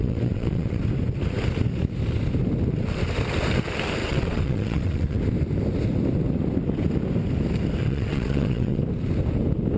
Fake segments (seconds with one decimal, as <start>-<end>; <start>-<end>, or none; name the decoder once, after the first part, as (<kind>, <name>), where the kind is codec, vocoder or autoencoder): 0.0-0.8 (vocoder, WaveNeXt); 4.0-5.2; 7.8-8.8